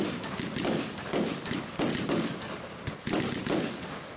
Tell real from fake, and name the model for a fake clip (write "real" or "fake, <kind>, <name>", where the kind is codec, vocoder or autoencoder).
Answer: real